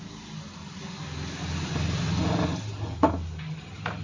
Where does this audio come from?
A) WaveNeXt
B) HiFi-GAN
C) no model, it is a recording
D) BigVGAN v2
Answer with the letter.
C